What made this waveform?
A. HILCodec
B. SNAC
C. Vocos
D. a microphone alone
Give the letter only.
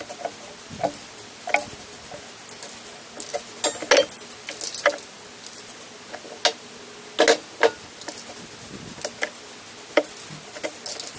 D